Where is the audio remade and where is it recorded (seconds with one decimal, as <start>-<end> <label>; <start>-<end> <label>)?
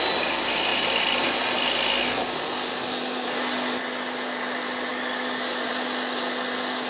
0.0-4.9 recorded; 4.9-5.7 remade; 5.7-6.9 recorded